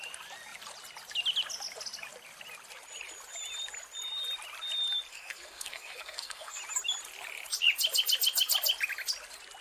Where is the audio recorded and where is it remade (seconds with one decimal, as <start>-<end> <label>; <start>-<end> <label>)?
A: 0.0-5.1 recorded; 5.1-6.6 remade; 6.6-9.6 recorded